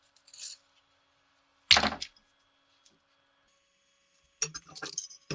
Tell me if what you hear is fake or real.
real